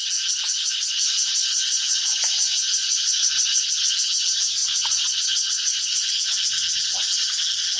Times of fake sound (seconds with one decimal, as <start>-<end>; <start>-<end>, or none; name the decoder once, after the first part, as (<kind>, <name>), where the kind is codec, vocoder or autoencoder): 2.8-3.9 (vocoder, Vocos); 4.6-6.1